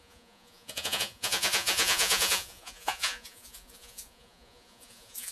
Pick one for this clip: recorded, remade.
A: remade